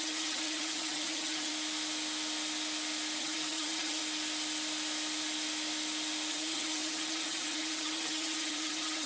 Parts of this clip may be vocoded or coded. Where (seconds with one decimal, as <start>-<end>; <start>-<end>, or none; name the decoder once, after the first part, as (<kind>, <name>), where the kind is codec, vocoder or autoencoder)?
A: 0.0-1.5 (vocoder, HiFi-GAN); 3.2-4.0; 6.3-9.1